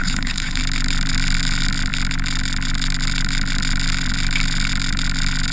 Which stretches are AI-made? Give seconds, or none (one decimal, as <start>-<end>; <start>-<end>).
0.0-0.6